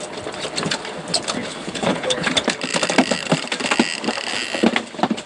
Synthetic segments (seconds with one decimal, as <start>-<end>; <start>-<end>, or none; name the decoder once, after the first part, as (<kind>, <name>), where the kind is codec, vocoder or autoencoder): 1.5-2.3 (codec, HILCodec)